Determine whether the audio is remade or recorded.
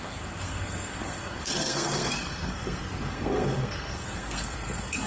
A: remade